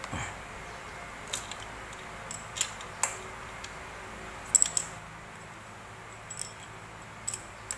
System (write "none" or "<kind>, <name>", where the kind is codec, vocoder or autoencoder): none